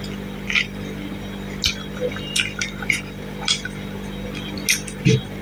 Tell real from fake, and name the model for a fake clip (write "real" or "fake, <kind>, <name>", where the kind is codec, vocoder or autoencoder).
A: real